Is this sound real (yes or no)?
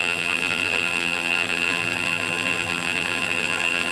no